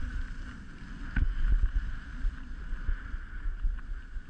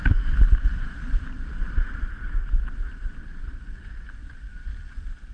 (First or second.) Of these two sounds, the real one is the first